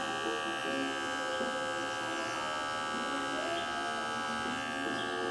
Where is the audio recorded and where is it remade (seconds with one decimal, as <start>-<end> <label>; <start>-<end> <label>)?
0.0-5.3 recorded